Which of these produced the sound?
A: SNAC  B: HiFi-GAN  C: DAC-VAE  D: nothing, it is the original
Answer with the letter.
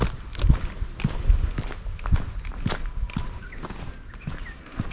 D